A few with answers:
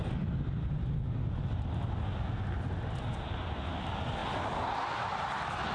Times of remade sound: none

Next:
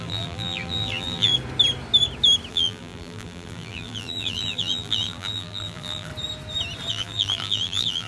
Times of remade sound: 0.0-1.3 (vocoder, BigVGAN v2); 2.5-6.1; 6.9-8.1

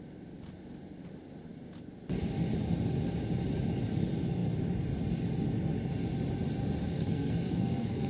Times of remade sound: 6.8-8.1 (codec, SNAC)

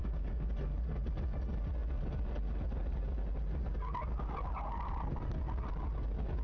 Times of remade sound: 0.0-0.5 (codec, DAC)

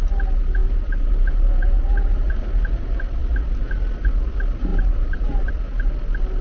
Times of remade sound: 0.6-2.3 (vocoder, BigVGAN v2); 4.7-5.5